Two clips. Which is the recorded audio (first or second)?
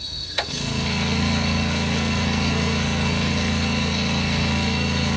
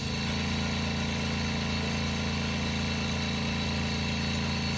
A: second